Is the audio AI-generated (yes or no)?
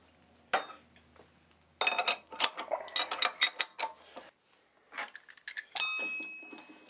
no